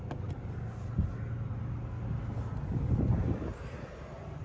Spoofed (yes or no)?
no